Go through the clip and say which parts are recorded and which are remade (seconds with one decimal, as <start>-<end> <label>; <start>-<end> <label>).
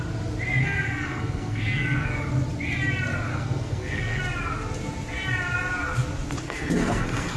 0.0-0.6 recorded; 0.6-2.2 remade; 2.2-3.3 recorded; 3.3-4.2 remade; 4.2-6.4 recorded; 6.4-7.4 remade